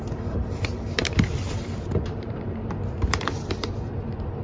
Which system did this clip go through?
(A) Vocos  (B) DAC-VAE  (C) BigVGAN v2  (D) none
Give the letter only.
C